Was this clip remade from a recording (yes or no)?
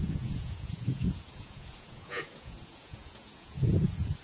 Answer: yes